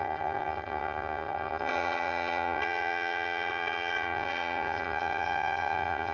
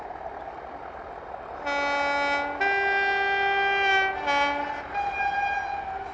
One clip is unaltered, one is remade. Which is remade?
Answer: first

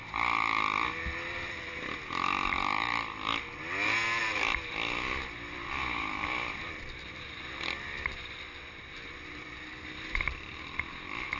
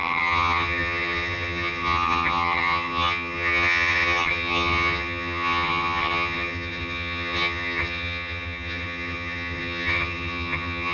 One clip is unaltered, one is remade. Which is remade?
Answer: second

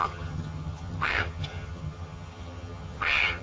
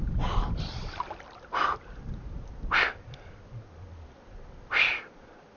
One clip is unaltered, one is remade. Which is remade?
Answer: first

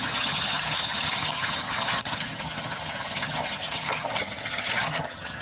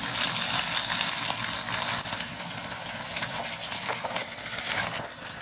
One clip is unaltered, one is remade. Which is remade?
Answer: first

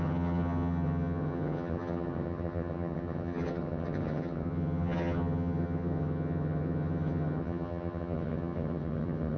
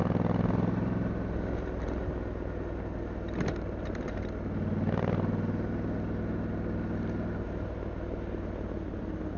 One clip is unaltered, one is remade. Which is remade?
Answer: first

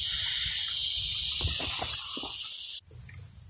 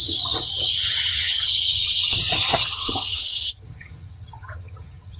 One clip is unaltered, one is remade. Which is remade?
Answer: second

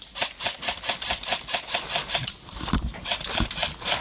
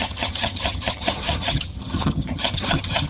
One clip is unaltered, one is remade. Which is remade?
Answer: second